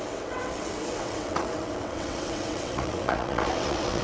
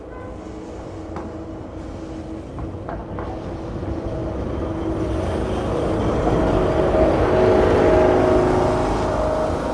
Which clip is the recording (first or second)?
second